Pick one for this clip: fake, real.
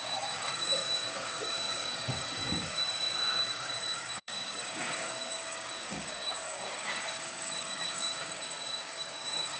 fake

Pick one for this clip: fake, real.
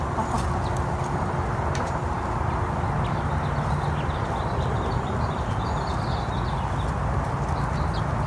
real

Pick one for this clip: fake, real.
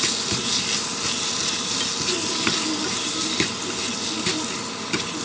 real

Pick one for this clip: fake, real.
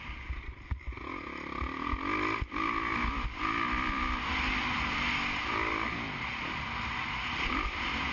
real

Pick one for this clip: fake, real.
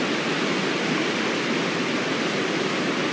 real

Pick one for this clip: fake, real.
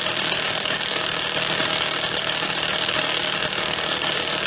fake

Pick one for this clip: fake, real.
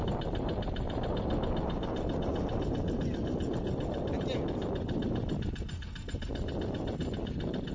real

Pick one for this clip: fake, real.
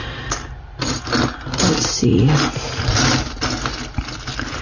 real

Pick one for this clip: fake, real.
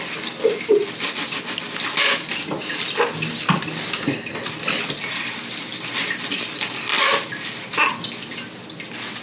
real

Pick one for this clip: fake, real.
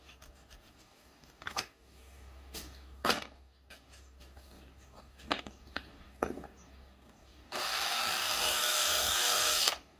fake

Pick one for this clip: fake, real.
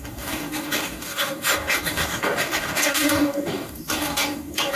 fake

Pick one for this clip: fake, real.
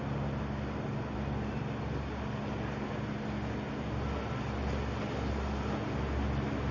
real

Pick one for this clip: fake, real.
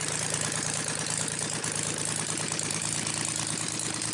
real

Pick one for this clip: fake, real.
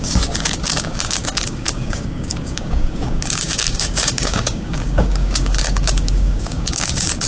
fake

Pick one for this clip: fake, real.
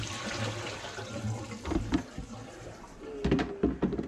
real